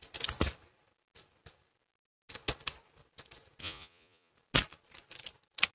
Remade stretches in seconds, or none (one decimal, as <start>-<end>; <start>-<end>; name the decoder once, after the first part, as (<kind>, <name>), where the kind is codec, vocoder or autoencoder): 3.6-4.3 (vocoder, Vocos)